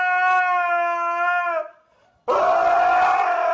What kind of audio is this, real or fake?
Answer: real